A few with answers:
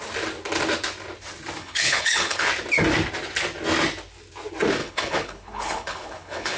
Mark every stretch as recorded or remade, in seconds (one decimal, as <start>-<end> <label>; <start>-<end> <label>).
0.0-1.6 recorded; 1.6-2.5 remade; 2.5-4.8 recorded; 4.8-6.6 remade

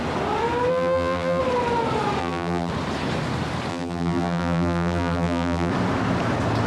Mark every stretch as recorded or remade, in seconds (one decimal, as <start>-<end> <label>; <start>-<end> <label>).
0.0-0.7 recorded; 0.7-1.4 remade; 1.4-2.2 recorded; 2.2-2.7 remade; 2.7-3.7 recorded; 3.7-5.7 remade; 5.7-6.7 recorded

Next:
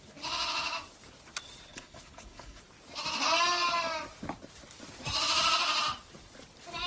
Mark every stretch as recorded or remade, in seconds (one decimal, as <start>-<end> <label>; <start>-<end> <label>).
0.0-1.7 recorded; 1.7-2.6 remade; 2.6-6.9 recorded

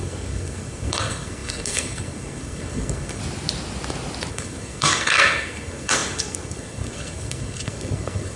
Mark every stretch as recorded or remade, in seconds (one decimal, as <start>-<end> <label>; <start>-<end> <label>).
0.0-3.2 remade; 3.2-4.3 recorded; 4.3-8.4 remade